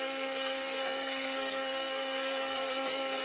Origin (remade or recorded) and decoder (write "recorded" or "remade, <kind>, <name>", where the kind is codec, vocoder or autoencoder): remade, codec, SNAC